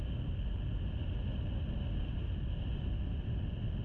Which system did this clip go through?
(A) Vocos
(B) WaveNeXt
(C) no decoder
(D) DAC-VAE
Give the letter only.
C